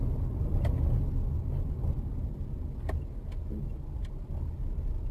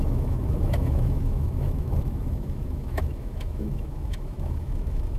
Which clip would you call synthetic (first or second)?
second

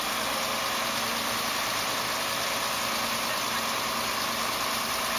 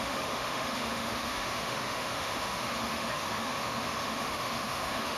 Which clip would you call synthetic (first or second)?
second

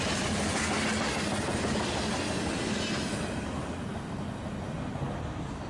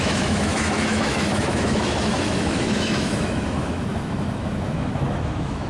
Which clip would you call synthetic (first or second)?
second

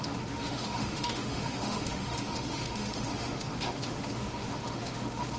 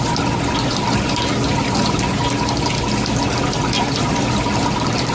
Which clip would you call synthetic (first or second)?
first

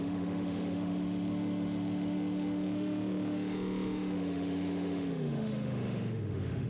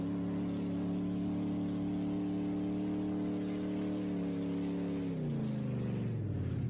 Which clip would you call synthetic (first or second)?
first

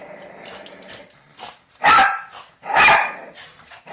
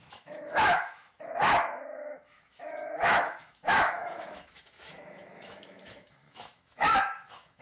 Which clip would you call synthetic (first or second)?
second